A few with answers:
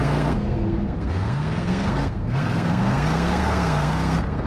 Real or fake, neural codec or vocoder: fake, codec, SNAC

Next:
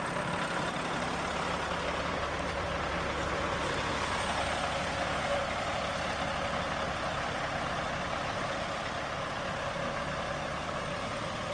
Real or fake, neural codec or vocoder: real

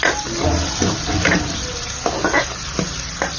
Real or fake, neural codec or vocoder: real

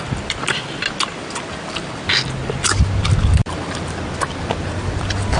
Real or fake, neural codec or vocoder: real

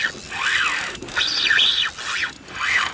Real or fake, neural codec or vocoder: real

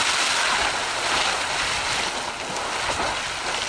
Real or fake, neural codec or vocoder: real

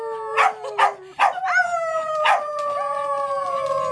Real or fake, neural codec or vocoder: real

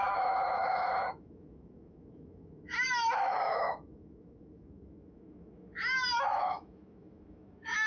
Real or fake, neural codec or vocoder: fake, autoencoder, DAC-VAE